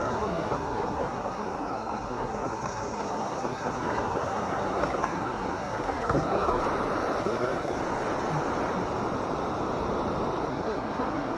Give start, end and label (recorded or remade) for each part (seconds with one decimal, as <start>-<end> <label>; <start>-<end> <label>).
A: 0.0-6.6 remade; 6.6-7.2 recorded; 7.2-7.8 remade; 7.8-10.5 recorded; 10.5-11.4 remade